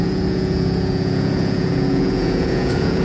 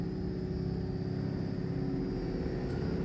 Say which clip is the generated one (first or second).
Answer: first